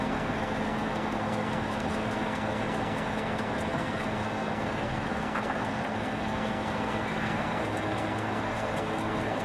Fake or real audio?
fake